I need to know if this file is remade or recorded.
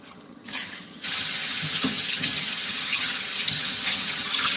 remade